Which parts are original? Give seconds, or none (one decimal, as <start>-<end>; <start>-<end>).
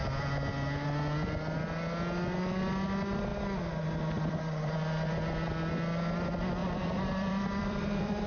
0.0-6.6